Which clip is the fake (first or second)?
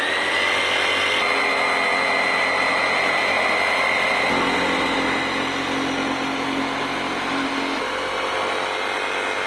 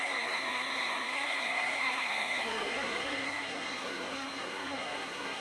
second